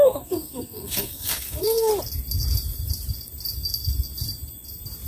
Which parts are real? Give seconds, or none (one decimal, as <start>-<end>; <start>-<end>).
1.9-5.1